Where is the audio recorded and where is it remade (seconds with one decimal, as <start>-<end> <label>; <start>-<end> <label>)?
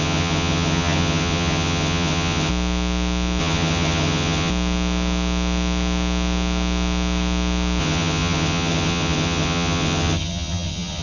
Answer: 0.0-2.5 remade; 2.5-3.4 recorded; 3.4-4.5 remade; 4.5-7.8 recorded; 7.8-11.0 remade